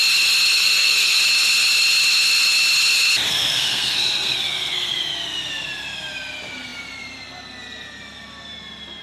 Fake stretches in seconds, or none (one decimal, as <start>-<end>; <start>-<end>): 0.6-1.2; 3.3-4.9